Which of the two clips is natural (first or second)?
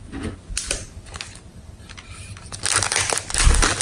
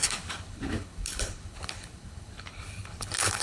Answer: first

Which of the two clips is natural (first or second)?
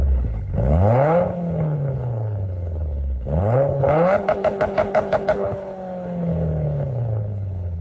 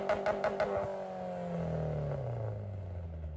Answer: second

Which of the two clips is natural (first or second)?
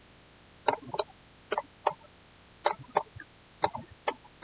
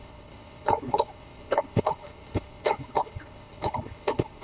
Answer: first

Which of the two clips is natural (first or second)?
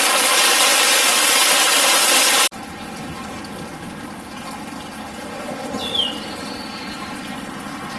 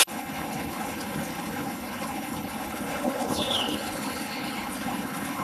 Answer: first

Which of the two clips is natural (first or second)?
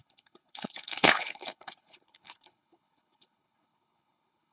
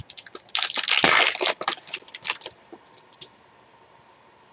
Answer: second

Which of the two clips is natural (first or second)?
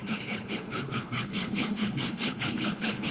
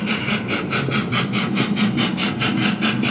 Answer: second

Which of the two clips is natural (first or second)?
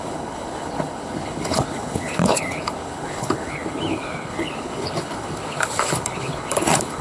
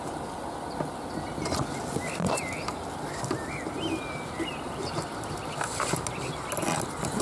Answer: second